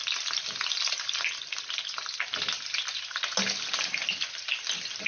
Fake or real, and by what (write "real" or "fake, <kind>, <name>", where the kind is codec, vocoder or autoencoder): real